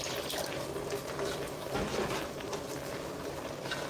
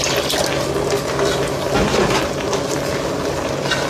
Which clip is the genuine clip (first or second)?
second